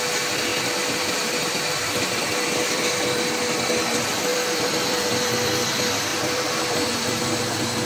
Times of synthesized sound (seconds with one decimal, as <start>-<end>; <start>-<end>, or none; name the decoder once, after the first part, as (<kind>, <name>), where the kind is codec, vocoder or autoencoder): 0.5-3.1 (vocoder, BigVGAN v2); 4.3-5.5; 6.1-7.4